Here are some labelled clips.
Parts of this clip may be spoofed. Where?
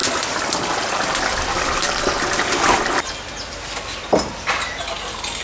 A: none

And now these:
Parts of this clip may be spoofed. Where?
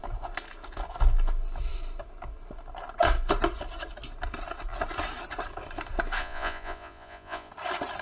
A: 6.2-7.5 (vocoder, Vocos)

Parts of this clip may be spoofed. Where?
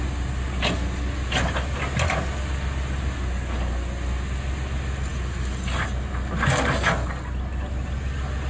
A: none